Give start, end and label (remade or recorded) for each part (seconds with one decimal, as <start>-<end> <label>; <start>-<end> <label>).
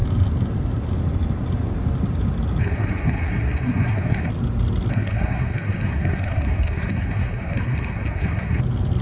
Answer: 0.0-2.6 recorded; 2.6-4.3 remade; 4.3-4.9 recorded; 4.9-8.6 remade; 8.6-9.0 recorded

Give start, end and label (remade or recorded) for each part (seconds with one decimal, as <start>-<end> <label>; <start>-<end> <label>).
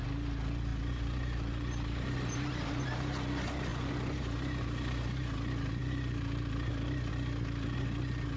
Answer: 0.0-8.4 recorded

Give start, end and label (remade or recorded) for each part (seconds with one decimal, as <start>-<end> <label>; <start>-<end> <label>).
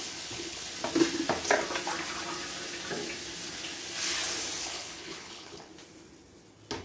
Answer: 0.0-0.7 remade; 0.7-4.6 recorded; 4.6-5.7 remade; 5.7-6.8 recorded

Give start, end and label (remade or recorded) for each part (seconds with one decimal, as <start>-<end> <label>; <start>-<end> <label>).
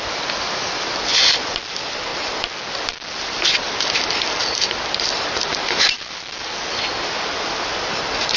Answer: 0.0-5.5 recorded; 5.5-6.5 remade; 6.5-8.4 recorded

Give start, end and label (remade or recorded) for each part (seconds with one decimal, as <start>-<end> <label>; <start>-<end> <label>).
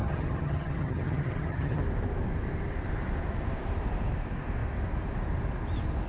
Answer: 0.0-1.8 remade; 1.8-6.1 recorded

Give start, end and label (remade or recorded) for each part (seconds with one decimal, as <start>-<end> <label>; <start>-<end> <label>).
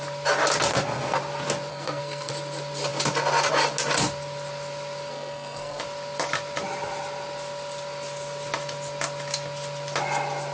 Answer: 0.0-0.7 recorded; 0.7-1.2 remade; 1.2-1.7 recorded; 1.7-2.3 remade; 2.3-5.1 recorded; 5.1-5.8 remade; 5.8-10.5 recorded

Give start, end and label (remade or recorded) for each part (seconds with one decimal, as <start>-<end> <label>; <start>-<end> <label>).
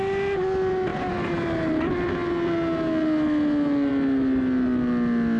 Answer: 0.0-5.4 recorded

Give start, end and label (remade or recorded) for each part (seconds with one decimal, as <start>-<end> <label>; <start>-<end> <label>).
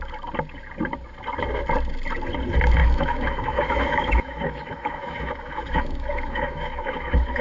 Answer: 0.0-2.8 recorded; 2.8-7.4 remade